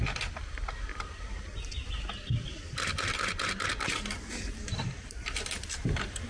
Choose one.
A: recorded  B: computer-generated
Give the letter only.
A